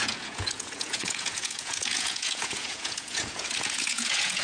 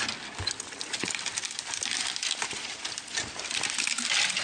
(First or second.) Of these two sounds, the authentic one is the second